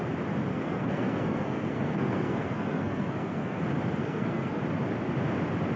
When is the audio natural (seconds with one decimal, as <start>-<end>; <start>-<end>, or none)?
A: 0.0-0.5; 3.6-4.0; 4.6-5.8